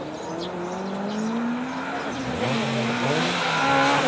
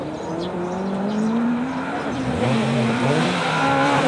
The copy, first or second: second